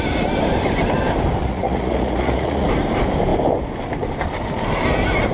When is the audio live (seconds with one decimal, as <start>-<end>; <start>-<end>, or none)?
0.0-1.4; 2.7-5.3